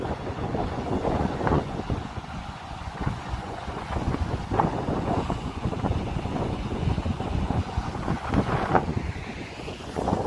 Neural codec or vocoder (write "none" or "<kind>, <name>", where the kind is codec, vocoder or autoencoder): vocoder, Vocos